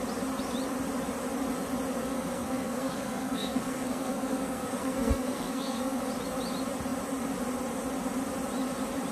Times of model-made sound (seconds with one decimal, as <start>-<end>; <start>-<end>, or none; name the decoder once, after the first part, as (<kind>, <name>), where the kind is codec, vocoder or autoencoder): 2.0-6.1 (codec, SNAC)